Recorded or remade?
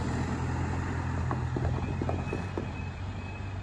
recorded